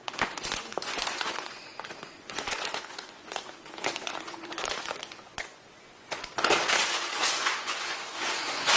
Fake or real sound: fake